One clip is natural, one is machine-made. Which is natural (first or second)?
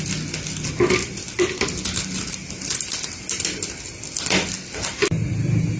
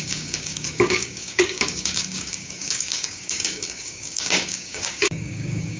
first